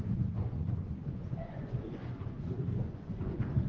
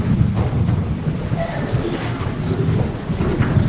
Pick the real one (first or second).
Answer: second